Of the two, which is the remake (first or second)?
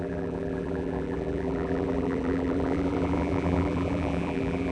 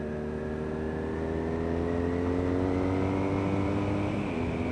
first